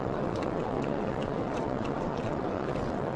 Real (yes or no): no